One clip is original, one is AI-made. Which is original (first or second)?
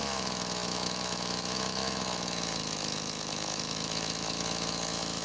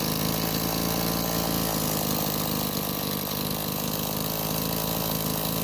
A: second